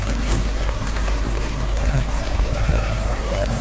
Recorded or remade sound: remade